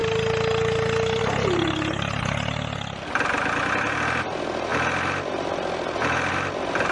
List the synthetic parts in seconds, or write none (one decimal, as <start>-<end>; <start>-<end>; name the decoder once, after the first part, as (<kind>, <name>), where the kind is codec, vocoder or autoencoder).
none